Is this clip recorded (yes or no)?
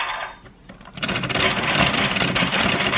yes